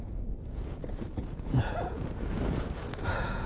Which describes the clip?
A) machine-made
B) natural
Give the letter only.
A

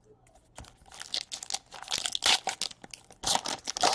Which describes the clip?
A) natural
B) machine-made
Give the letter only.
A